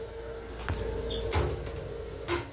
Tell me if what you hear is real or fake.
real